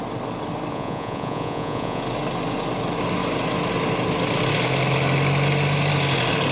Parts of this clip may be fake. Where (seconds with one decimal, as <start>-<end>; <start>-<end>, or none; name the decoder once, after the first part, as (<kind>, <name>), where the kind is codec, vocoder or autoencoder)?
0.7-2.0 (vocoder, Vocos)